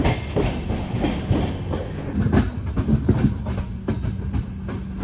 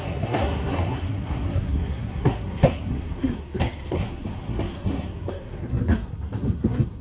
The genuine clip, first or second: first